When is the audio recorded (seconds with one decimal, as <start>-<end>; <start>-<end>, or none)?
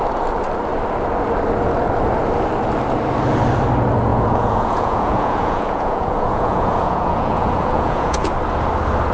0.0-4.1; 8.3-9.1